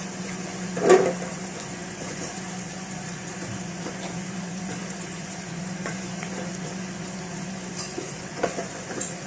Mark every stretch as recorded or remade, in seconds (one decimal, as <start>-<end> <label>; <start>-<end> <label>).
0.0-0.7 remade; 0.7-1.3 recorded; 1.3-9.3 remade